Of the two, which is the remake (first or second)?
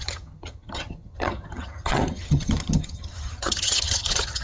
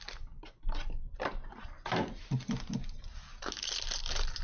first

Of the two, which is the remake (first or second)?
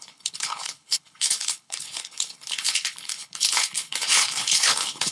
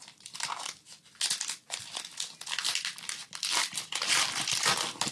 first